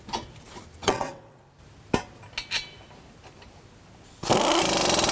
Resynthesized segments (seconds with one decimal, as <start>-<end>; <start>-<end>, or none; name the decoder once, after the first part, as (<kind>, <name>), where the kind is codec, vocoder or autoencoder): 0.8-1.4 (vocoder, WaveNeXt)